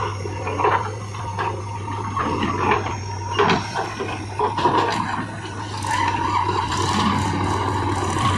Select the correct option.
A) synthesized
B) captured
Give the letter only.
B